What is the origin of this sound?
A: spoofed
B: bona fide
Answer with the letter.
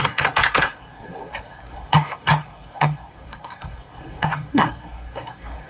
A